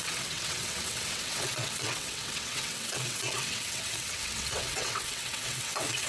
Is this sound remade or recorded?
remade